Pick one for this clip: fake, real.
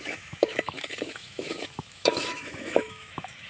fake